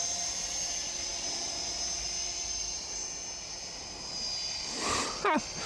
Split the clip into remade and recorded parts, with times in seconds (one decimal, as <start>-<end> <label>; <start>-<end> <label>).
0.0-5.7 recorded